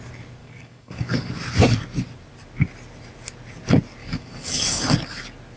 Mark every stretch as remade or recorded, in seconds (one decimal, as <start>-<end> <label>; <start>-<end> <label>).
0.0-0.4 recorded; 0.4-1.3 remade; 1.3-4.0 recorded; 4.0-4.8 remade; 4.8-5.6 recorded